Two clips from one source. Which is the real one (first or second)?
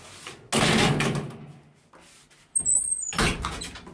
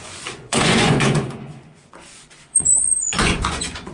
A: first